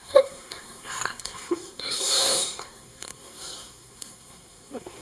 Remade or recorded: remade